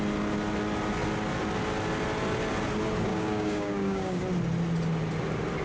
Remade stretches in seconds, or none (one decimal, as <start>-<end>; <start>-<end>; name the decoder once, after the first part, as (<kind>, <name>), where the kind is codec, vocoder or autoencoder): 3.1-4.2 (codec, DAC)